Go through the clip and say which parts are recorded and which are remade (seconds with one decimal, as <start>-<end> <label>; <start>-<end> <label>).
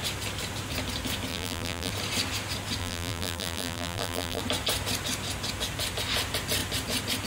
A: 0.0-1.3 recorded; 1.3-1.9 remade; 1.9-2.8 recorded; 2.8-4.4 remade; 4.4-7.3 recorded